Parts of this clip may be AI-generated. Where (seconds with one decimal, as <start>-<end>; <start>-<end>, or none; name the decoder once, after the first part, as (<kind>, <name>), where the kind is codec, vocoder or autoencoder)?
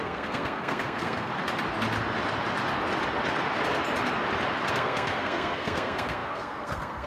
0.0-1.3 (codec, SNAC); 4.7-7.1